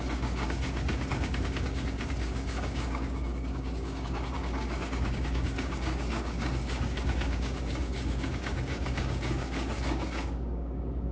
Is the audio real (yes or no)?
no